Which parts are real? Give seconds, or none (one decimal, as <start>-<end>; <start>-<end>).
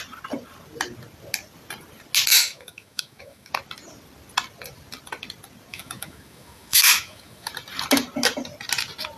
0.0-2.3; 3.5-5.7; 7.5-9.2